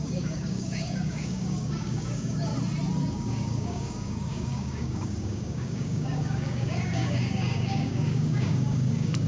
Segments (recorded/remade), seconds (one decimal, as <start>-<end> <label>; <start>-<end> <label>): 0.0-2.5 remade; 2.5-3.1 recorded; 3.1-9.3 remade